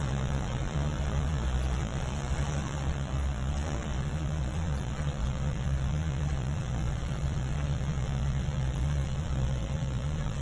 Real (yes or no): no